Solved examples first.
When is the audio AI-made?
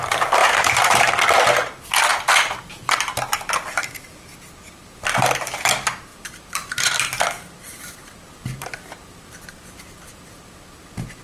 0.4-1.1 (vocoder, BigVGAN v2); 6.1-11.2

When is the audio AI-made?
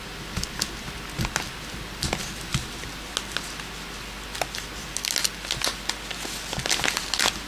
none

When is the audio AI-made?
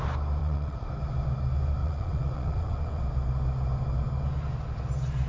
0.4-0.9 (vocoder, WaveNeXt); 1.8-3.0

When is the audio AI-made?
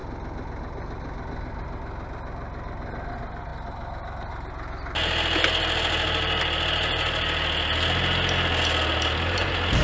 none